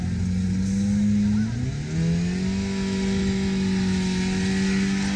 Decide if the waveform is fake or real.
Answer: real